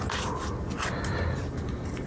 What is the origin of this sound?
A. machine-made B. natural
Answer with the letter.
B